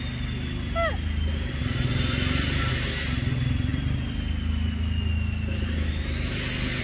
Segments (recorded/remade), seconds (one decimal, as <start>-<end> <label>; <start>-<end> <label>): 0.0-6.8 recorded